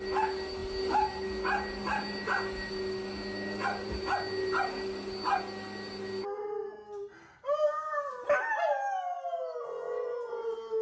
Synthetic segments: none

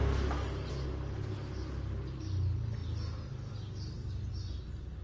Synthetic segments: none